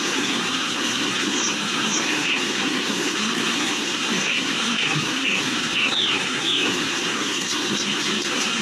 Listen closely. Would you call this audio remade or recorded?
remade